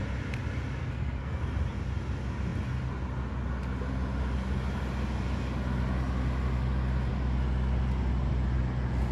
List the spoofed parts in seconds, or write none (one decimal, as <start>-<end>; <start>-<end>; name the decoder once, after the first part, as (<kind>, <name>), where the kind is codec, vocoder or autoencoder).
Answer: 0.8-1.4 (codec, SNAC)

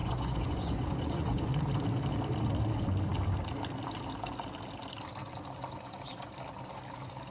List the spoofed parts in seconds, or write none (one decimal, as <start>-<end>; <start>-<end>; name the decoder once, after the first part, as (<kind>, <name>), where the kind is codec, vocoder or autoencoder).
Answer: 0.0-1.5 (vocoder, Vocos)

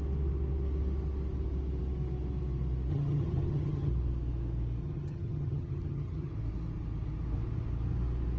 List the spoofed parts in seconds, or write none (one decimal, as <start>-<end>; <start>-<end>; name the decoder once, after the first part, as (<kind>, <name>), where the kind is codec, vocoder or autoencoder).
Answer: 2.9-3.9 (vocoder, HiFi-GAN); 4.8-6.3

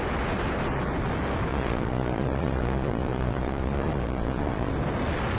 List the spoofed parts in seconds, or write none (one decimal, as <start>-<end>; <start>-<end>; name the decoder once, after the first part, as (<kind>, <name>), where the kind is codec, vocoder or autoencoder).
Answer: 1.5-4.7 (vocoder, Vocos)

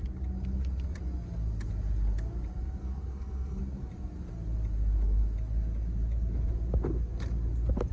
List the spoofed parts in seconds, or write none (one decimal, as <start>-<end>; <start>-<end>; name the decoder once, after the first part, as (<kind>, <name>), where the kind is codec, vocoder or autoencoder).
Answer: 2.8-3.6 (codec, SNAC)

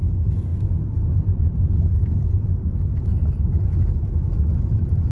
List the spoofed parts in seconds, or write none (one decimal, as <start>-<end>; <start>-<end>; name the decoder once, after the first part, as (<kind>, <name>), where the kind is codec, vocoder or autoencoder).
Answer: 0.5-2.5 (vocoder, BigVGAN v2); 3.1-3.8; 4.5-5.1